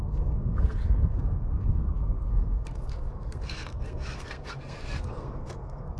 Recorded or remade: remade